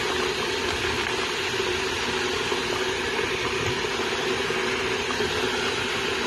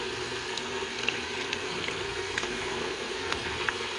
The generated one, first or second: second